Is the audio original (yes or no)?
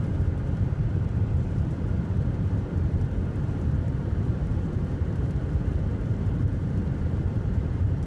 no